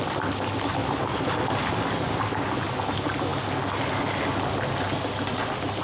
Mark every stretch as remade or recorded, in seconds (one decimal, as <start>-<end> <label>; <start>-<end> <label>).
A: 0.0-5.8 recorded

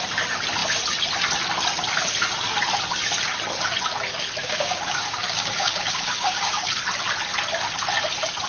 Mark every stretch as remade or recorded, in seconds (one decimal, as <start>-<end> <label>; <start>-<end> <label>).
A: 0.0-4.4 recorded; 4.4-6.7 remade; 6.7-8.5 recorded

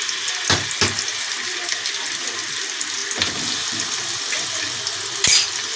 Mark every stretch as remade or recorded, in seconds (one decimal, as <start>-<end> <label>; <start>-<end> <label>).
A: 0.0-5.8 recorded